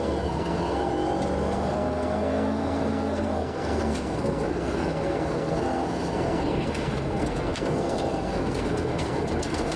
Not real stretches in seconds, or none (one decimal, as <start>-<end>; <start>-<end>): 0.0-0.9; 1.5-9.8